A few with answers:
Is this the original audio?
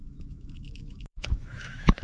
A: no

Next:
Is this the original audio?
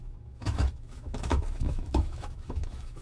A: no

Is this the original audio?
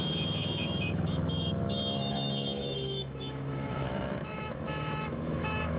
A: no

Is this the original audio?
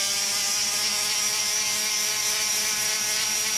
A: yes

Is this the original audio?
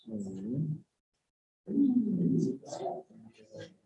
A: yes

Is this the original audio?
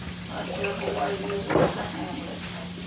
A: yes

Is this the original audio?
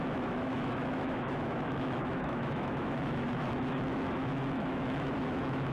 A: no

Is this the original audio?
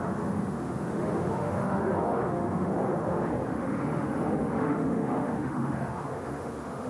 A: no